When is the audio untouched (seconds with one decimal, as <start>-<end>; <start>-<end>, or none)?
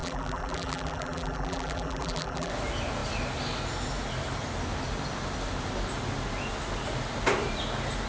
2.5-8.1